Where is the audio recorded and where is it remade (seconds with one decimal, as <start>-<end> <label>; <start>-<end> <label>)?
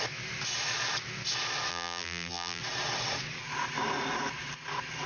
0.0-1.7 recorded; 1.7-2.6 remade; 2.6-5.1 recorded